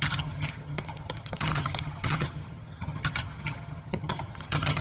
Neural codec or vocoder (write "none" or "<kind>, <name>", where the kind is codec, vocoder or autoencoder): vocoder, HiFi-GAN